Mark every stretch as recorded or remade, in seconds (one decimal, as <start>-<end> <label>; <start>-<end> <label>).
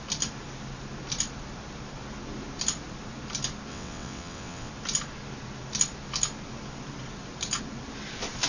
0.0-3.7 recorded; 3.7-4.7 remade; 4.7-8.5 recorded